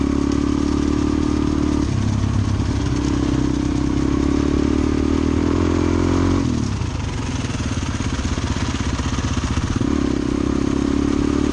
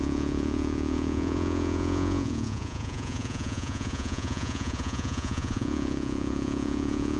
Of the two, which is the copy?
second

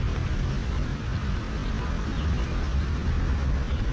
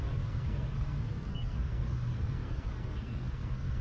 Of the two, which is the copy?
second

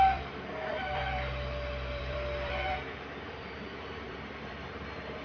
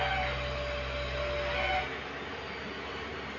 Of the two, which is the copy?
first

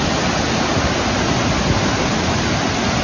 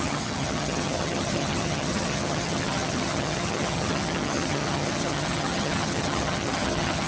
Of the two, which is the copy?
second